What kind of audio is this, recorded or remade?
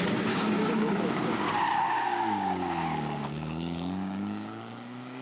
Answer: remade